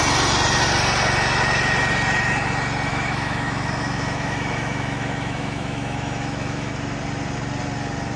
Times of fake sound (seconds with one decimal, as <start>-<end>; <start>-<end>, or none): 2.9-6.7